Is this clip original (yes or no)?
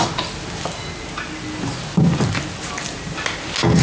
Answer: yes